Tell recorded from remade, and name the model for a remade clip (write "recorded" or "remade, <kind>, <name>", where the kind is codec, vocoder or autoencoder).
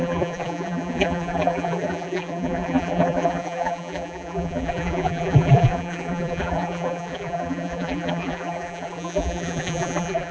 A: remade, vocoder, BigVGAN v2